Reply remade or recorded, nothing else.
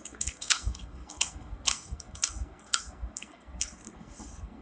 remade